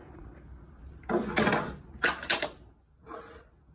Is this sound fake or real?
real